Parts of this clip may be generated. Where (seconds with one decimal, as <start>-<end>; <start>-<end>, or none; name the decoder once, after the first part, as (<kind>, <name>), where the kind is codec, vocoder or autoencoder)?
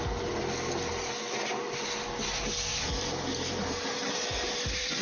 2.7-5.0 (vocoder, BigVGAN v2)